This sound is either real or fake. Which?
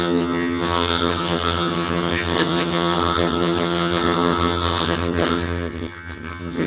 fake